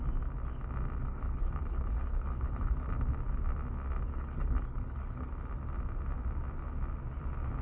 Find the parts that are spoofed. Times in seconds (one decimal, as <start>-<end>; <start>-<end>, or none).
1.0-2.7; 4.1-5.3